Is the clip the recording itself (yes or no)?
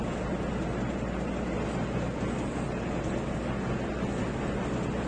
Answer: yes